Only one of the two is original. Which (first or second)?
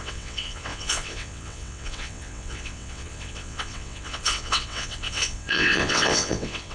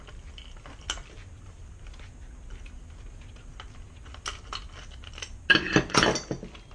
second